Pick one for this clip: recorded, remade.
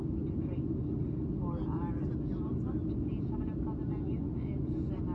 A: recorded